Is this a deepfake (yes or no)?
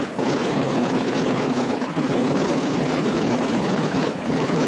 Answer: yes